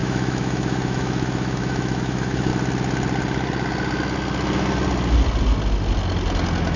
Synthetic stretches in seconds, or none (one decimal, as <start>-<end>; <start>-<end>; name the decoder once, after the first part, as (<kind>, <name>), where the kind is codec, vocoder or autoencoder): 0.0-2.5 (autoencoder, DAC-VAE)